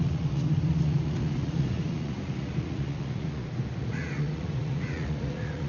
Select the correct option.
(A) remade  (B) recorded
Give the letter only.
A